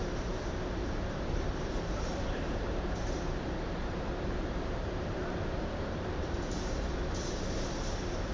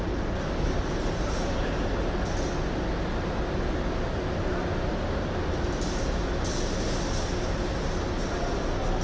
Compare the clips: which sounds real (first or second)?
second